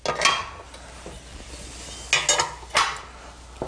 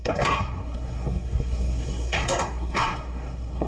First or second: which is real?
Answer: first